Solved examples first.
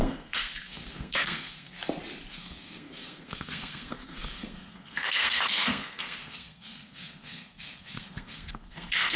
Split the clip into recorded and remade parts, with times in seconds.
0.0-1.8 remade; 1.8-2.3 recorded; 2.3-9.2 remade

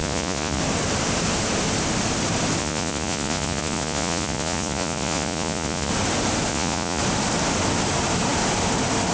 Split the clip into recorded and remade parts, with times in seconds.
0.0-0.6 remade; 0.6-2.6 recorded; 2.6-5.9 remade; 5.9-6.5 recorded; 6.5-7.0 remade; 7.0-9.1 recorded

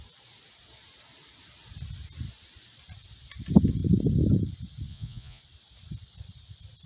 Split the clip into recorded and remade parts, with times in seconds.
0.0-4.9 recorded; 4.9-5.4 remade; 5.4-6.9 recorded

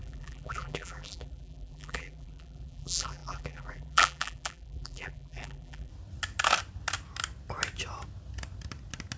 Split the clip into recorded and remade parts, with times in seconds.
0.0-5.9 remade; 5.9-9.2 recorded

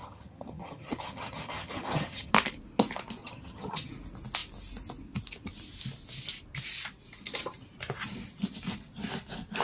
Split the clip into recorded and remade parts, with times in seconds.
0.0-2.3 remade; 2.3-3.2 recorded; 3.2-3.9 remade; 3.9-9.6 recorded

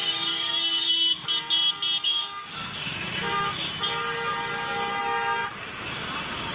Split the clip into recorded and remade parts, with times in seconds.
0.0-1.3 remade; 1.3-2.0 recorded; 2.0-3.7 remade; 3.7-5.4 recorded; 5.4-6.5 remade

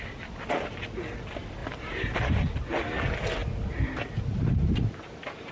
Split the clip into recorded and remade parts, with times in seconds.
0.0-1.6 recorded; 1.6-2.4 remade; 2.4-3.4 recorded; 3.4-4.7 remade; 4.7-5.5 recorded